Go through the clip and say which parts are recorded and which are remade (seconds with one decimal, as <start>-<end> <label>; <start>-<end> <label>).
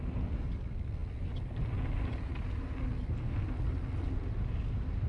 0.0-5.1 recorded